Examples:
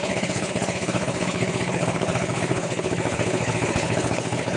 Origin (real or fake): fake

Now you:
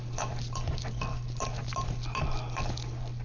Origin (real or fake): real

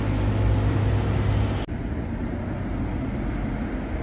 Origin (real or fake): real